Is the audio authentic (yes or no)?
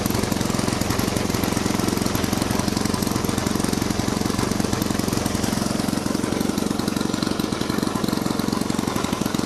yes